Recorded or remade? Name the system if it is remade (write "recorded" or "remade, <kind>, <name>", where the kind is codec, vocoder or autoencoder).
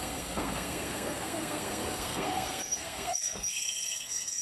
remade, codec, SNAC